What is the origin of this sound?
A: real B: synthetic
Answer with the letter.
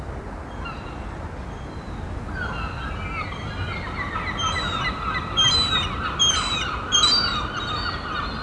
A